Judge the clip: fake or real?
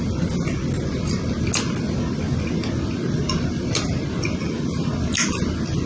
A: real